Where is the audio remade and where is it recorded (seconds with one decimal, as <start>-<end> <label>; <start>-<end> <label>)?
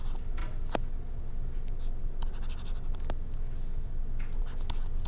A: 0.0-5.1 recorded